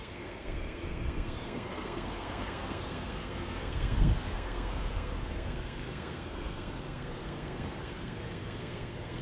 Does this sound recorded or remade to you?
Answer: remade